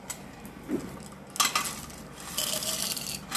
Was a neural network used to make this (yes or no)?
no